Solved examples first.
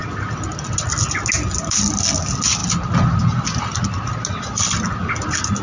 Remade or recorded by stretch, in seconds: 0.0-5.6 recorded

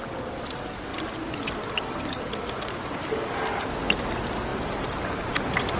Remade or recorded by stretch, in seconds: 0.0-5.8 recorded

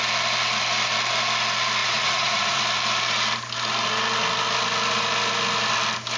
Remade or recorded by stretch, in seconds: 0.0-1.8 recorded; 1.8-2.6 remade; 2.6-6.2 recorded

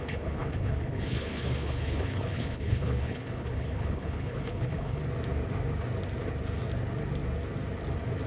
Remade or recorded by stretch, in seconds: 0.0-5.0 remade; 5.0-8.3 recorded